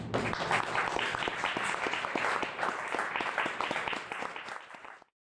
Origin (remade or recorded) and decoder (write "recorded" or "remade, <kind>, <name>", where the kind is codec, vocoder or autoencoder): recorded